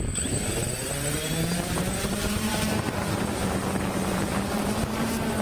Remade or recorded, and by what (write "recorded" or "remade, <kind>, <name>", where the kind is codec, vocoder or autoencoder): remade, vocoder, BigVGAN v2